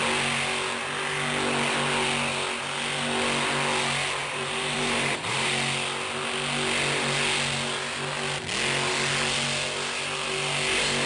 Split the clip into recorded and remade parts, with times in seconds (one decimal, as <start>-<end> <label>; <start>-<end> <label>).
0.0-4.2 recorded; 4.2-5.5 remade; 5.5-11.1 recorded